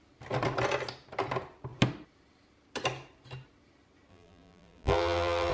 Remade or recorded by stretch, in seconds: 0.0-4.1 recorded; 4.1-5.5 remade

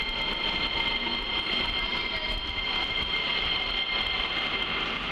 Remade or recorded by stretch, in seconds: 0.0-5.1 recorded

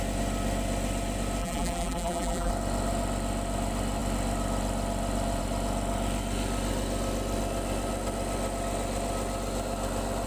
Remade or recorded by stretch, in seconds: 0.0-1.4 recorded; 1.4-2.5 remade; 2.5-10.3 recorded

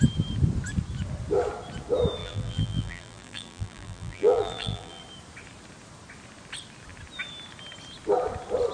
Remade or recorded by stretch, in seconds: 0.0-2.2 recorded; 2.2-5.0 remade; 5.0-8.7 recorded

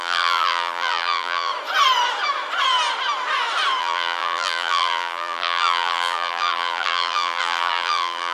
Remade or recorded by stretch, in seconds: 0.0-1.5 remade; 1.5-3.8 recorded; 3.8-8.3 remade

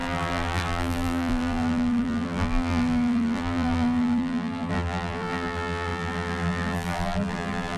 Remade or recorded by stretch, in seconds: 0.0-7.8 remade

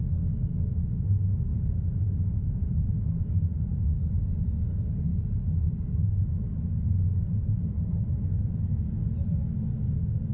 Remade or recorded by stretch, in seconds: 0.0-1.5 recorded; 1.5-2.9 remade; 2.9-5.1 recorded; 5.1-6.2 remade; 6.2-10.3 recorded

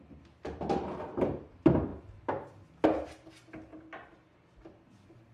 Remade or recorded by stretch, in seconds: 0.0-3.7 recorded; 3.7-4.5 remade; 4.5-5.3 recorded